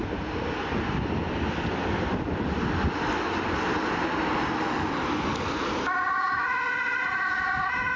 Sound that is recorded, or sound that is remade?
recorded